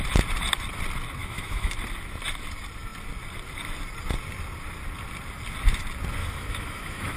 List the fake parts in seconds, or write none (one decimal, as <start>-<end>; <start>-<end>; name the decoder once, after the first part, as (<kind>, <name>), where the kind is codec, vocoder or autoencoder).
1.2-1.7 (autoencoder, DAC-VAE); 6.2-7.2